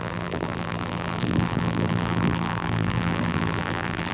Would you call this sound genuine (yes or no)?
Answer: no